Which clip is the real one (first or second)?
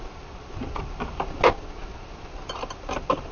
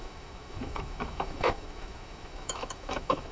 first